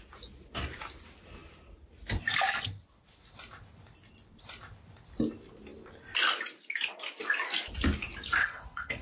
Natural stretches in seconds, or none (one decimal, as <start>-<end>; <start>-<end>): 0.0-8.4